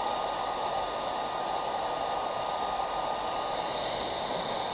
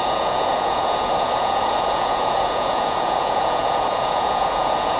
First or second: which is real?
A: first